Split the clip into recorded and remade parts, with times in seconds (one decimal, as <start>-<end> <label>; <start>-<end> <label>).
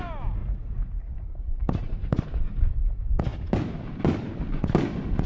0.0-0.4 recorded; 0.4-1.0 remade; 1.0-1.6 recorded; 1.6-2.6 remade; 2.6-5.3 recorded